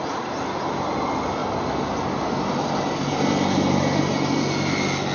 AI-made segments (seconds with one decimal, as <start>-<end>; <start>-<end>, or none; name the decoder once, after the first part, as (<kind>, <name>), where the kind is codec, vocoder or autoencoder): none